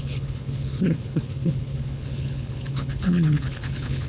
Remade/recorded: remade